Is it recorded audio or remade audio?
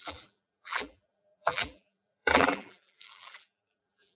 remade